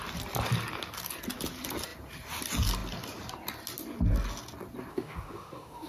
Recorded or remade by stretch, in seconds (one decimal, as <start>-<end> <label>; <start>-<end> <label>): 0.0-4.9 recorded; 4.9-5.9 remade